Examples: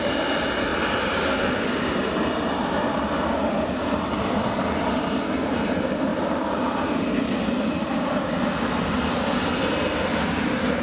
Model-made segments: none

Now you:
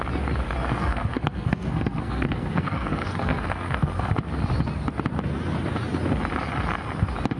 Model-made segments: 0.8-4.1 (codec, SNAC)

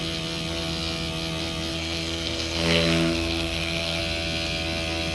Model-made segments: 1.7-4.0 (codec, SNAC)

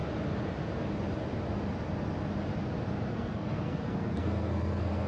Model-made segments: 3.1-5.1 (codec, SNAC)

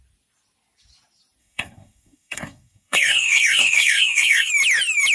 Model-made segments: 1.4-4.5 (codec, SNAC)

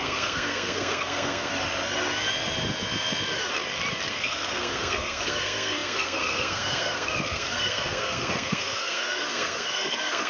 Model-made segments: 0.0-1.5 (codec, SNAC); 4.1-10.3

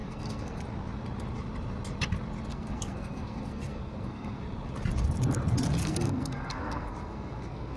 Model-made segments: 0.0-0.6 (codec, SNAC); 2.5-4.4; 5.8-7.8